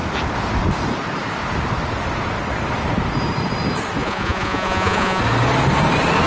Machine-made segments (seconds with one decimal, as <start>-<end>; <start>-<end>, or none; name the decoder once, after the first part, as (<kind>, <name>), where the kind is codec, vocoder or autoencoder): 4.0-5.2 (vocoder, Vocos)